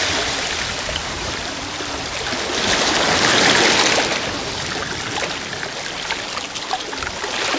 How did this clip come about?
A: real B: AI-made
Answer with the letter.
A